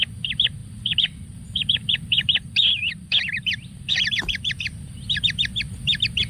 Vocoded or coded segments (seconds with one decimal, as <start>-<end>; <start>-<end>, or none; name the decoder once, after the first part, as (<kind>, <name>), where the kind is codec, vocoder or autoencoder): 0.6-4.4 (vocoder, BigVGAN v2)